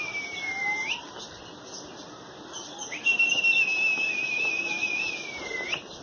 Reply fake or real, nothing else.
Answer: real